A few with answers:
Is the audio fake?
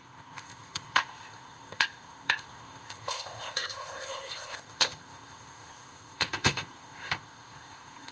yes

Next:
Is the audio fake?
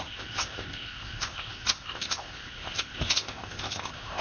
yes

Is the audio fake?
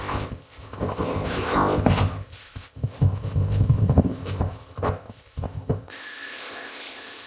yes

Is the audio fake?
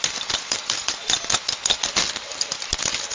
no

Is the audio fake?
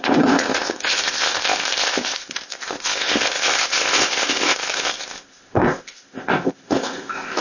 yes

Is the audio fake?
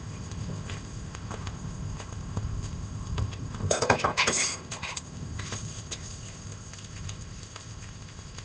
yes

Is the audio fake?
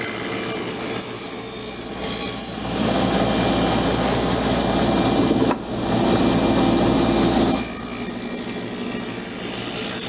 no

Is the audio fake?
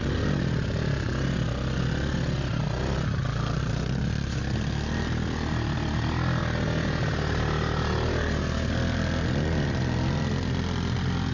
no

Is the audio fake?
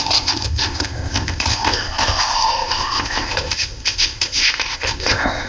yes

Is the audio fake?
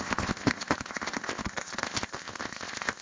yes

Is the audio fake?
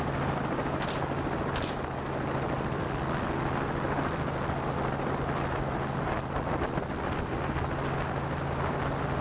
no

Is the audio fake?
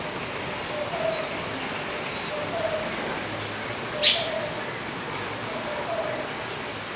no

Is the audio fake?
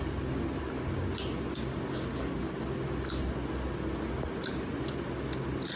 no